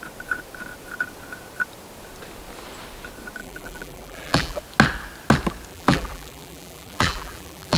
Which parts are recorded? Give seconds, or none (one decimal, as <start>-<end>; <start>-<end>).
0.0-3.4; 4.6-5.7